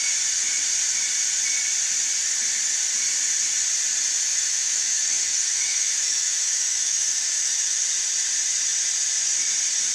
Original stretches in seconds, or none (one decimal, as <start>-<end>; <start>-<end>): 0.0-4.3; 7.8-9.9